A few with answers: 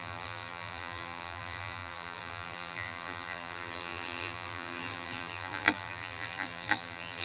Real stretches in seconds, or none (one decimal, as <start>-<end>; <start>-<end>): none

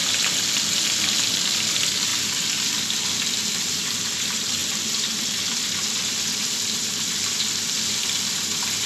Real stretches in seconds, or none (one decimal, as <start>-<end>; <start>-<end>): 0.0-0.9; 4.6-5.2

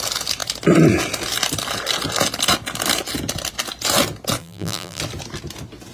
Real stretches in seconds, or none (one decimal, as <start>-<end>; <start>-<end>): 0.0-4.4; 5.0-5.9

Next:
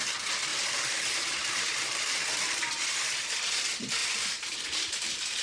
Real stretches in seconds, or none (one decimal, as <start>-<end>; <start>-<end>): 0.0-0.5; 3.3-4.0

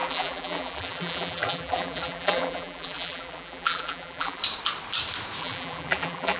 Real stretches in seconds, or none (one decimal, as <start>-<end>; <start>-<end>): 4.4-5.4